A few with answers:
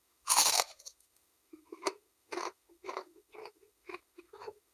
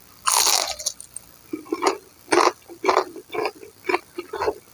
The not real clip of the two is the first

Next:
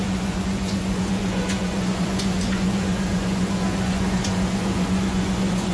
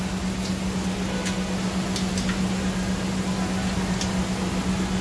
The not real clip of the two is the first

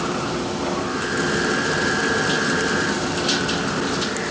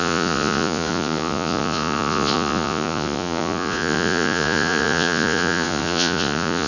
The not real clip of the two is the second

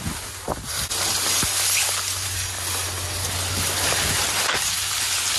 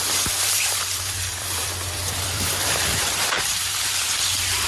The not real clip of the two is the second